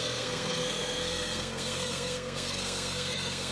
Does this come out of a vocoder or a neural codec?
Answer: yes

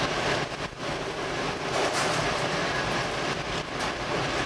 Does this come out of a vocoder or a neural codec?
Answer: no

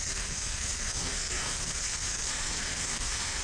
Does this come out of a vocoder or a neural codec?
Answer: yes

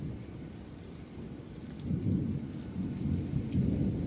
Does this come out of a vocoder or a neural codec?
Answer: no